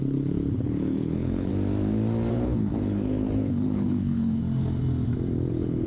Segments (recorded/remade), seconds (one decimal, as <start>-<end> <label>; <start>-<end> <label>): 0.0-1.5 remade; 1.5-2.3 recorded; 2.3-4.4 remade; 4.4-5.5 recorded; 5.5-5.9 remade